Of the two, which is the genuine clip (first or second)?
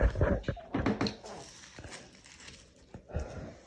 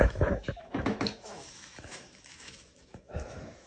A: first